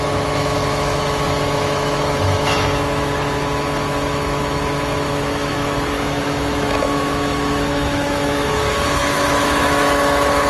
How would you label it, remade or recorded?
remade